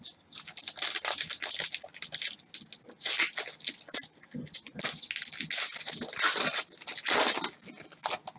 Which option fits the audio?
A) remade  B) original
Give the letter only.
B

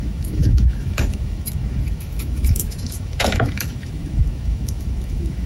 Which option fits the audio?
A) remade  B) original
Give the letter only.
A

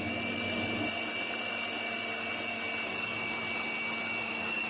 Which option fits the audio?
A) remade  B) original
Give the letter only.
B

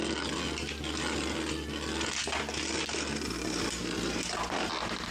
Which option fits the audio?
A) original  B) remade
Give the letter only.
A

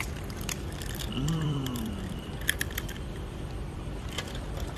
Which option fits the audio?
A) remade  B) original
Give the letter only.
A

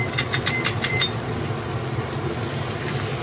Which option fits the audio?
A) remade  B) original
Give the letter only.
B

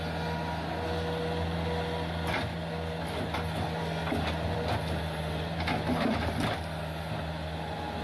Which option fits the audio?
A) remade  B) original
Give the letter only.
B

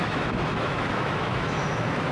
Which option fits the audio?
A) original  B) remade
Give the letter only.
B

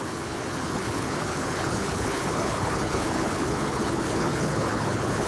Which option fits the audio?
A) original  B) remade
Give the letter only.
B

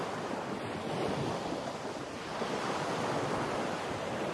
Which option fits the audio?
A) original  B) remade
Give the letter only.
A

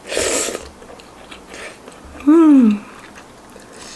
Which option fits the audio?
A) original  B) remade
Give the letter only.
A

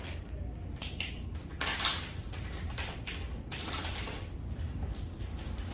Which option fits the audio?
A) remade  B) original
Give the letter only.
B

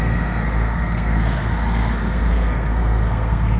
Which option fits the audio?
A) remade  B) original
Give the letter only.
A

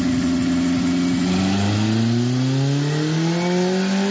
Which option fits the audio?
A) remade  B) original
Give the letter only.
B